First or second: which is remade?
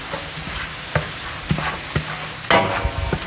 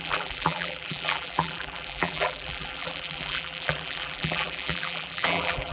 second